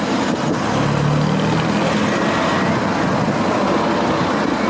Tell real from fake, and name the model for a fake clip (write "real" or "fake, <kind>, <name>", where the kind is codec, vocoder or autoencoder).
real